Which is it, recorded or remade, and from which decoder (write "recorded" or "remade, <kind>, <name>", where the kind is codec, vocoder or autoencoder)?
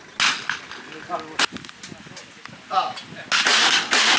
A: recorded